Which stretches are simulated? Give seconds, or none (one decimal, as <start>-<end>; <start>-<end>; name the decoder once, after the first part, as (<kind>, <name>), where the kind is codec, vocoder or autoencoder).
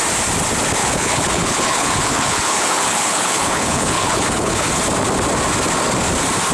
0.8-4.7 (codec, HILCodec)